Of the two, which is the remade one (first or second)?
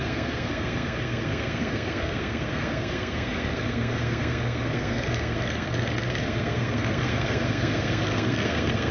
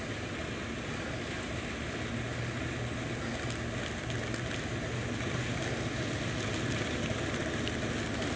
first